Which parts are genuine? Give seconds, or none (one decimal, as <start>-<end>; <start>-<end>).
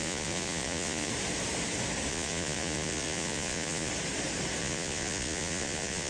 1.1-2.1; 3.9-4.6